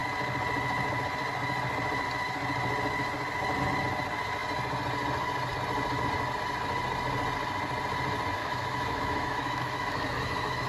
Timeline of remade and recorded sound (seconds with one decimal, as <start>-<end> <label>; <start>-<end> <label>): 0.0-8.4 recorded; 8.4-10.7 remade